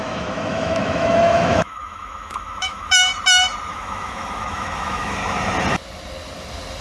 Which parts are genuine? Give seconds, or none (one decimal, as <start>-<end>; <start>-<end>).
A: 3.1-3.7; 5.2-6.8